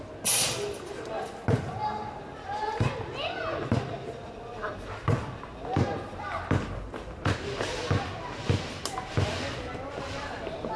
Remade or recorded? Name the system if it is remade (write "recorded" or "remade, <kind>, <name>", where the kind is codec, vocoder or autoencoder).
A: recorded